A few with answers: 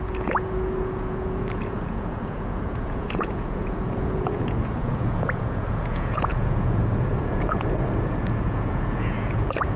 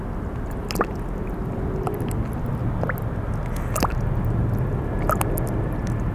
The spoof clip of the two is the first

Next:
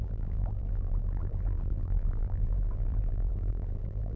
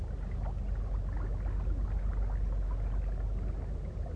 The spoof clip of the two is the first